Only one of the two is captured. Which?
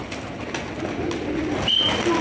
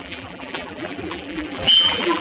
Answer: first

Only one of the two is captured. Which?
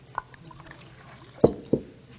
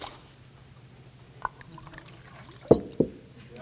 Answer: first